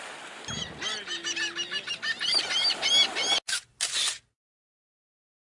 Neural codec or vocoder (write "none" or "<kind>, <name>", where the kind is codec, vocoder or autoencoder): none